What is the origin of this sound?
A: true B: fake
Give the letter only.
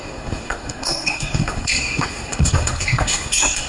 B